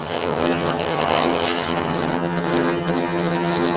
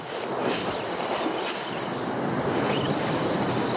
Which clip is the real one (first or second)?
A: second